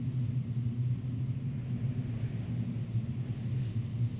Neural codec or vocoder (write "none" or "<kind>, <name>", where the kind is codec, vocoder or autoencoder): none